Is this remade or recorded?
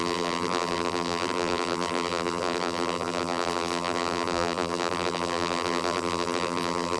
remade